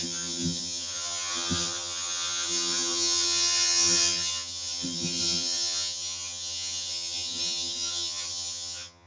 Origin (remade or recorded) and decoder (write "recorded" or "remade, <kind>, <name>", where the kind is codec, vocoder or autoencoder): remade, vocoder, HiFi-GAN